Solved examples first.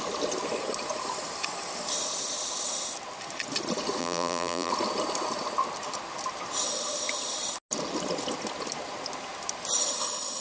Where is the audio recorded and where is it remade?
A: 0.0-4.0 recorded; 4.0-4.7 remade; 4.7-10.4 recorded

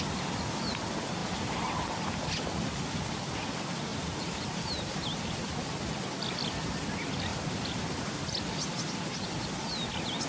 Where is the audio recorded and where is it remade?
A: 0.0-1.2 recorded; 1.2-2.2 remade; 2.2-3.9 recorded; 3.9-5.5 remade; 5.5-7.3 recorded; 7.3-8.3 remade; 8.3-10.3 recorded